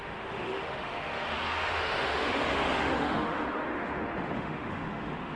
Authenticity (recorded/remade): remade